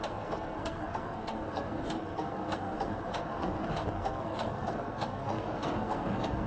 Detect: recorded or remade remade